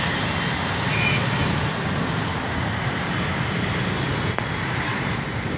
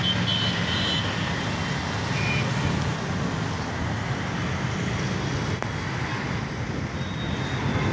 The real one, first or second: second